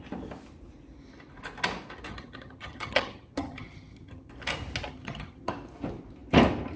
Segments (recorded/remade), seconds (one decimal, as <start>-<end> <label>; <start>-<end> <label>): 0.0-2.1 recorded; 2.1-4.3 remade; 4.3-4.9 recorded; 4.9-5.5 remade; 5.5-6.8 recorded